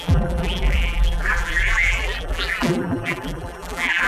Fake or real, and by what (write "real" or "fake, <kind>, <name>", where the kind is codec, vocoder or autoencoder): fake, vocoder, BigVGAN v2